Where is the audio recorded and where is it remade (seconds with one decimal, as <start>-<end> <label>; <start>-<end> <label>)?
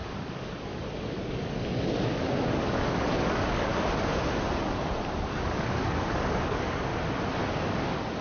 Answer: 0.0-3.7 remade; 3.7-5.3 recorded; 5.3-6.9 remade; 6.9-7.5 recorded; 7.5-8.2 remade